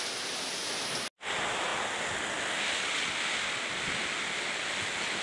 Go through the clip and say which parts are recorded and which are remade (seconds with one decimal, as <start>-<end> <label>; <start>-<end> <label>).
0.0-5.2 recorded